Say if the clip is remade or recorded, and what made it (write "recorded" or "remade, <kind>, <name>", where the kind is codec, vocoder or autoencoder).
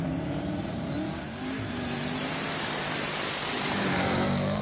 remade, vocoder, BigVGAN v2